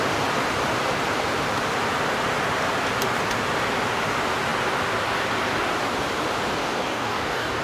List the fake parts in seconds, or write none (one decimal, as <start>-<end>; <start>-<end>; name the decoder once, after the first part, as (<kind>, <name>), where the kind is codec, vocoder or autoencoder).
6.6-7.6 (codec, DAC)